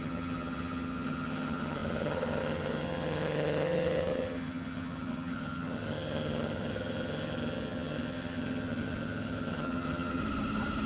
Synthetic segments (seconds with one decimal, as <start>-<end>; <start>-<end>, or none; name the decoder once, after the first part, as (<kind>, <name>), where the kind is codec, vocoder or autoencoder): 0.0-10.2 (vocoder, HiFi-GAN)